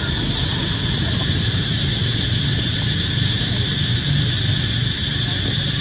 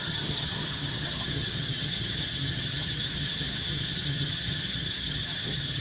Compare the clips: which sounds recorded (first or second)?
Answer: first